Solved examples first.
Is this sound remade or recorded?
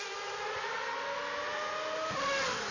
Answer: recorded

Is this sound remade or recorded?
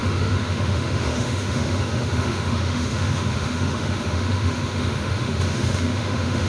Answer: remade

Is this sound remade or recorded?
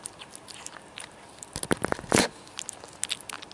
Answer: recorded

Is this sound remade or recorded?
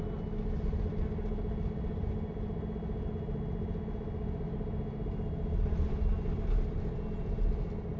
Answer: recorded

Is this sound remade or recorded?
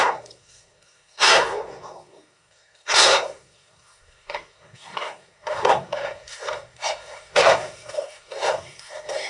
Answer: remade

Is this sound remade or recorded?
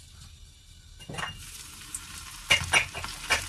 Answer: recorded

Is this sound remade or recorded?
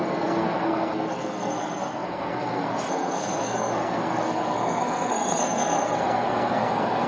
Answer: remade